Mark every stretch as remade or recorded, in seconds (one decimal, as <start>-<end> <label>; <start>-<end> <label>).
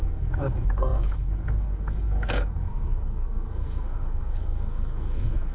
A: 0.0-5.5 remade